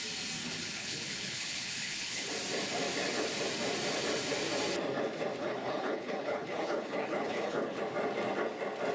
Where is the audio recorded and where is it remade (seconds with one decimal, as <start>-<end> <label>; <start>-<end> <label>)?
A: 0.0-0.4 recorded; 0.4-2.3 remade; 2.3-5.4 recorded; 5.4-7.8 remade; 7.8-8.9 recorded